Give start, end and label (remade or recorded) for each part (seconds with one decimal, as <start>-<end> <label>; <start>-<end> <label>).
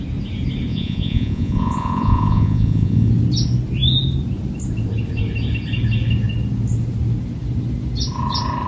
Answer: 0.0-0.7 recorded; 0.7-3.1 remade; 3.1-8.7 recorded